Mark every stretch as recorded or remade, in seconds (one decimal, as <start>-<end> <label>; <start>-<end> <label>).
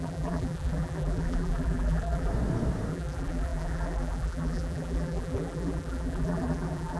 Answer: 0.0-2.3 remade; 2.3-2.9 recorded; 2.9-7.0 remade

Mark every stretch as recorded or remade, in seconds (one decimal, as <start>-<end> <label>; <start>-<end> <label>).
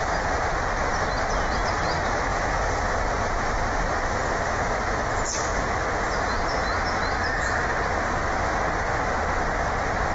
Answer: 0.0-2.3 recorded; 2.3-3.0 remade; 3.0-10.1 recorded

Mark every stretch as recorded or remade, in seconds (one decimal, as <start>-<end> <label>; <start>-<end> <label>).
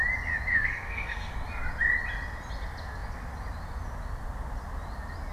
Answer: 0.0-0.5 recorded; 0.5-1.3 remade; 1.3-5.3 recorded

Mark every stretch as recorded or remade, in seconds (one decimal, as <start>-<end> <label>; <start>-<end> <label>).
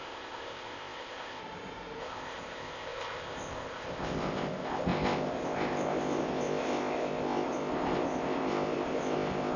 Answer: 0.0-1.4 remade; 1.4-2.0 recorded; 2.0-9.6 remade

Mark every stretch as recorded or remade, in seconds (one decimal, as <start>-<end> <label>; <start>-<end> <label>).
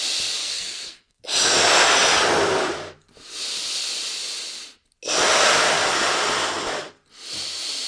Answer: 0.0-0.4 recorded; 0.4-1.2 remade; 1.2-7.9 recorded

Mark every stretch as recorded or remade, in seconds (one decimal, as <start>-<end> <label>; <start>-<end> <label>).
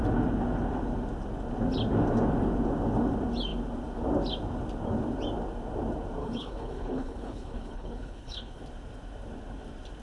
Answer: 0.0-6.2 recorded; 6.2-8.6 remade; 8.6-10.0 recorded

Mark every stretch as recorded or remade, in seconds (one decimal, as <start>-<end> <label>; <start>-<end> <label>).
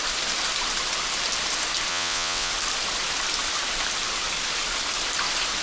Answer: 0.0-1.9 recorded; 1.9-2.5 remade; 2.5-5.6 recorded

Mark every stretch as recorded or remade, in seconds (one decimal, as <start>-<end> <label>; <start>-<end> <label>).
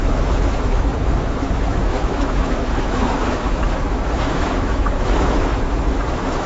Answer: 0.0-6.5 remade